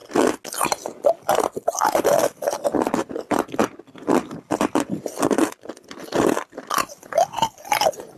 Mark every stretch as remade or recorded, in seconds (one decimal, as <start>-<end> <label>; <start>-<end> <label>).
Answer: 0.0-8.2 recorded